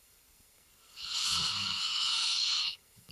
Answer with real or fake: fake